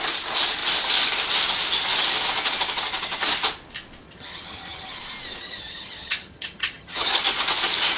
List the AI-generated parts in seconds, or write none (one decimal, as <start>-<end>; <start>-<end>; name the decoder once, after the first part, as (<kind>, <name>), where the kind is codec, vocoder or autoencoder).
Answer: 4.0-5.0 (vocoder, HiFi-GAN); 5.4-7.2